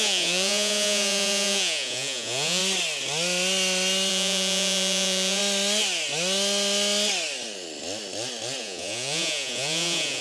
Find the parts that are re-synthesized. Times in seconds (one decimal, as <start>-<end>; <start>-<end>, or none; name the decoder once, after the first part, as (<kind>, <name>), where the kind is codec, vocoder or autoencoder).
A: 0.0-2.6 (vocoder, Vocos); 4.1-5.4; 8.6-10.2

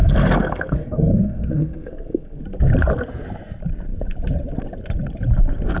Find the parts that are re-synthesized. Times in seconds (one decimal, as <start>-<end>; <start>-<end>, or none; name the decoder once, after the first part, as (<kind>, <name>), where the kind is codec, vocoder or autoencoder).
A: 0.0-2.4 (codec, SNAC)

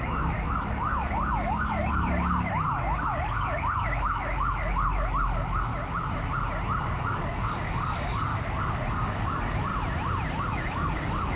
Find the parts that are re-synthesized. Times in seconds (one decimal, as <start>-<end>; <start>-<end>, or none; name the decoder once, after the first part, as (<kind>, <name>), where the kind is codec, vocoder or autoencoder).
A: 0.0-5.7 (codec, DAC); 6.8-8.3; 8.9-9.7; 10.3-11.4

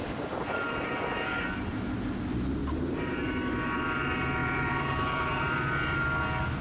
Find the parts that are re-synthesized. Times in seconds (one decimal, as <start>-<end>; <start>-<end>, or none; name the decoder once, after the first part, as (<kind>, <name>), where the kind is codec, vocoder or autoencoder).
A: 0.0-1.4 (vocoder, BigVGAN v2); 2.6-3.3; 4.4-5.4

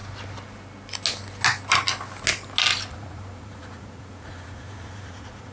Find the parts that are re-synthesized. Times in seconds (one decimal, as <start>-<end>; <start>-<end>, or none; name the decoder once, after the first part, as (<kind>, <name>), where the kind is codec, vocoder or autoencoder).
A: 2.9-5.5 (vocoder, Vocos)

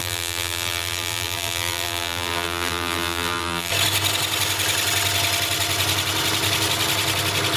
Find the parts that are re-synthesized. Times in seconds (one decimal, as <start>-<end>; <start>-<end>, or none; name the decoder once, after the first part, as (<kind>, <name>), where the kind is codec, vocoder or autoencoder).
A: 0.0-3.7 (vocoder, BigVGAN v2)